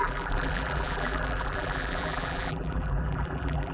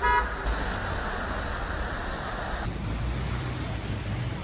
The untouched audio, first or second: second